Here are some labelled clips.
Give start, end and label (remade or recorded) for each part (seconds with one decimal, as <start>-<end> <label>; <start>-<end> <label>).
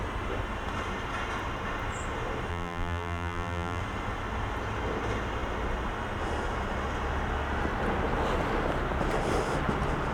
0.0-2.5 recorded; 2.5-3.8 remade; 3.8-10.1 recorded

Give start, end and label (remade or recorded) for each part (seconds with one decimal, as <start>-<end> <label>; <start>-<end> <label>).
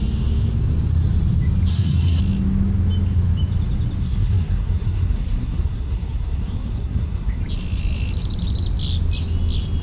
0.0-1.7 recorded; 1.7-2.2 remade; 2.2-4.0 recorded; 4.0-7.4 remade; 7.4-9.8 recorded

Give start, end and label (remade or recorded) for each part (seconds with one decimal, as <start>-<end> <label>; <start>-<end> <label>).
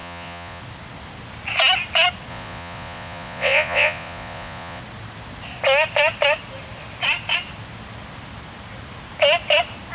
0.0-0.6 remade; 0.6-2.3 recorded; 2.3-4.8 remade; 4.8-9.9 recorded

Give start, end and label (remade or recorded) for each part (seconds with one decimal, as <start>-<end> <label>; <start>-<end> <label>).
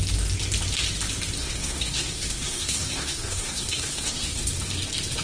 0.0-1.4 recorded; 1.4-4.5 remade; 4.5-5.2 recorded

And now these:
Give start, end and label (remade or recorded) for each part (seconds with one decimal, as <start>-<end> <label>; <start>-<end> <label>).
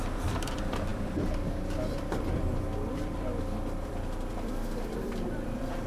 0.0-5.9 remade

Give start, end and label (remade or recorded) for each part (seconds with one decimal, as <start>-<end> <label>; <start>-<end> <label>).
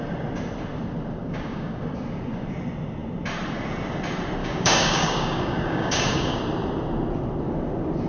0.0-1.2 recorded; 1.2-1.8 remade; 1.8-4.4 recorded; 4.4-6.4 remade; 6.4-8.1 recorded